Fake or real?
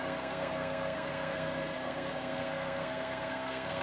fake